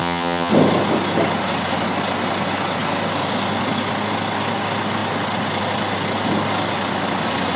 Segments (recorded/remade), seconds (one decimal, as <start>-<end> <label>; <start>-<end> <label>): 0.0-0.5 remade; 0.5-7.6 recorded